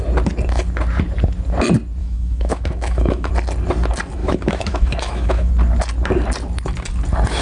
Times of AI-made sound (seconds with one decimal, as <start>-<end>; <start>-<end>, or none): 2.0-3.3; 4.2-5.5